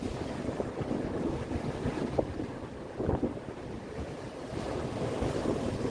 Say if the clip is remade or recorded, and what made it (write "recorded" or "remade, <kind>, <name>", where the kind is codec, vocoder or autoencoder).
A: recorded